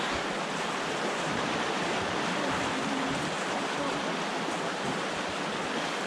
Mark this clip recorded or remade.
recorded